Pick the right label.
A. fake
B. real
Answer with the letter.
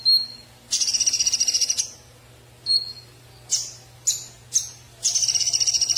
B